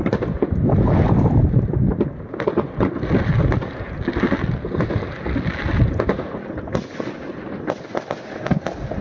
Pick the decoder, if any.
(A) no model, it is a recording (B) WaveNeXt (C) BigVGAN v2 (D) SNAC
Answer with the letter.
A